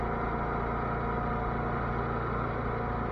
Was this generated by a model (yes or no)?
no